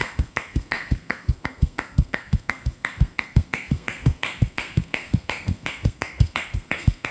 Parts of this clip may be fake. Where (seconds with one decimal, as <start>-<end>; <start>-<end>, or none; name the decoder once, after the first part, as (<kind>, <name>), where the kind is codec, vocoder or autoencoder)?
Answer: 0.0-7.1 (codec, SNAC)